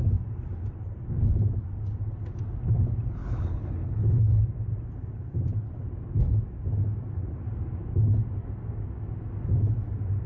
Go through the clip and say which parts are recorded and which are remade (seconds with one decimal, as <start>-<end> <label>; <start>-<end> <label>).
0.0-3.2 recorded; 3.2-4.1 remade; 4.1-10.3 recorded